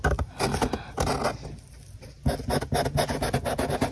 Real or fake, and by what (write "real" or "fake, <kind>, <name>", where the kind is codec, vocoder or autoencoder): real